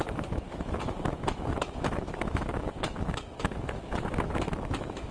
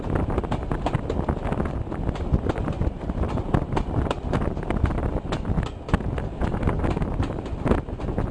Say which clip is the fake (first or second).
first